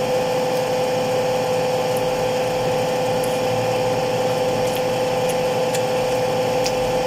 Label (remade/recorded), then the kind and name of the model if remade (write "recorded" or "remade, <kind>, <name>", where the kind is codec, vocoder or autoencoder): recorded